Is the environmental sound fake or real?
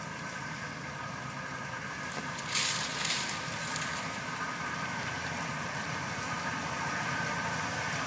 real